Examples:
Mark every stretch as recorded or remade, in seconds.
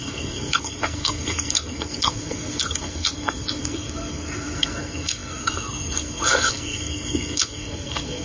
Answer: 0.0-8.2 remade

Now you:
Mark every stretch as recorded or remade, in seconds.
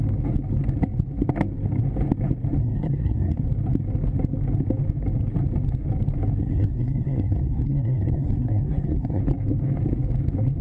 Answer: 0.0-2.6 recorded; 2.6-3.4 remade; 3.4-6.4 recorded; 6.4-9.2 remade; 9.2-10.6 recorded